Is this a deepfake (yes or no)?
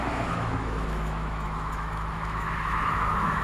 yes